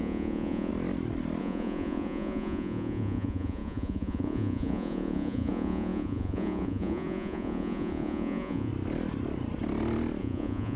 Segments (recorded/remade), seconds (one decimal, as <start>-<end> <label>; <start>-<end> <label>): 0.0-0.7 remade; 0.7-1.4 recorded; 1.4-8.7 remade; 8.7-10.2 recorded; 10.2-10.8 remade